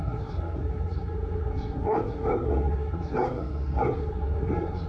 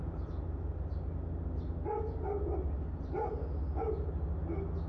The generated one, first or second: first